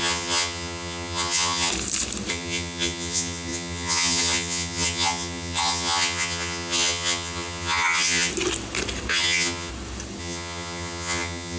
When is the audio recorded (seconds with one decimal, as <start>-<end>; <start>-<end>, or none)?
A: 1.7-2.3; 8.3-9.1; 9.7-10.2